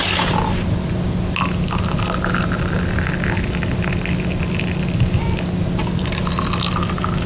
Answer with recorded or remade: recorded